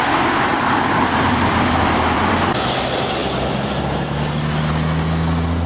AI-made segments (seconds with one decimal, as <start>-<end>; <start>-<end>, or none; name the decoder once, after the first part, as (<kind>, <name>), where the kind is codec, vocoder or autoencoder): 0.5-2.4 (vocoder, BigVGAN v2)